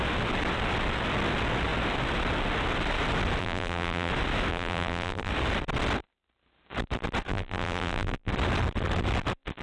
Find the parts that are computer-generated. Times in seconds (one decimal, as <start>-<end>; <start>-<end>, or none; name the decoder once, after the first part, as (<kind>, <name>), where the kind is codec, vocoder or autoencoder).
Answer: 3.4-4.1 (vocoder, BigVGAN v2); 4.5-5.3; 7.3-8.3